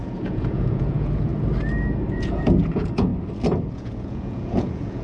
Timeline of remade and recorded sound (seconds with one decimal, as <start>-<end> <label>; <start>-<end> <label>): 0.0-1.3 remade; 1.3-2.1 recorded; 2.1-3.1 remade; 3.1-3.7 recorded; 3.7-5.0 remade